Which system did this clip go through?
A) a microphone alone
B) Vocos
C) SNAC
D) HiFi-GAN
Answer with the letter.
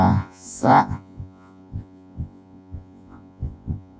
B